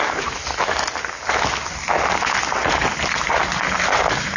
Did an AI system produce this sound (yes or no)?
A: no